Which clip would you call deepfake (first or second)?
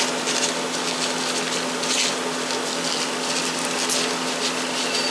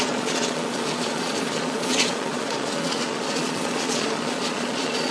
second